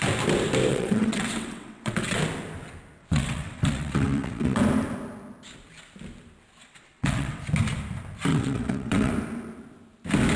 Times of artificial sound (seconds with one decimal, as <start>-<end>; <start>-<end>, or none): 0.7-2.2; 3.0-4.6; 6.6-7.4; 8.3-9.1